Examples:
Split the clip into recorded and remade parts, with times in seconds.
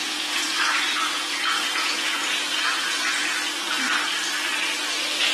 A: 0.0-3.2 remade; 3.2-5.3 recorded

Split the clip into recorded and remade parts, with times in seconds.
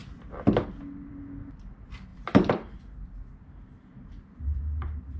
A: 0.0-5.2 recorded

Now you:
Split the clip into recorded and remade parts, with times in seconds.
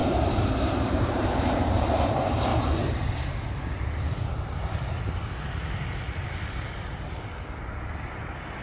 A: 0.0-2.5 remade; 2.5-7.6 recorded; 7.6-8.6 remade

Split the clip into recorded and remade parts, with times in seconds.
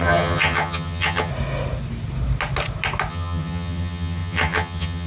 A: 0.0-1.3 remade; 1.3-3.1 recorded; 3.1-5.1 remade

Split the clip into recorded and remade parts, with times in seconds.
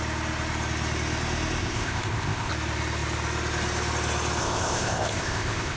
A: 0.0-1.6 recorded; 1.6-2.5 remade; 2.5-4.4 recorded; 4.4-5.8 remade